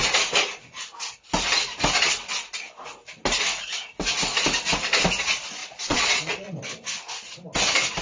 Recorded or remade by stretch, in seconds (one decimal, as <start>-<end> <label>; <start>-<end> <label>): 0.0-5.6 recorded; 5.6-6.5 remade; 6.5-8.0 recorded

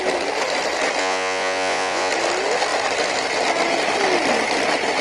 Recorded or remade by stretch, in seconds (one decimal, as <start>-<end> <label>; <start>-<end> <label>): 0.0-1.0 recorded; 1.0-2.1 remade; 2.1-5.0 recorded

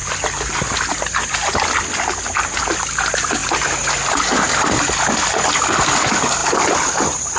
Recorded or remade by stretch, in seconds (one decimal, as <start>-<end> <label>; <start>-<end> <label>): 0.0-7.4 recorded